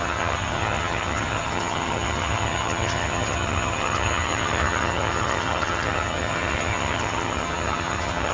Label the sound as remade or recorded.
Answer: remade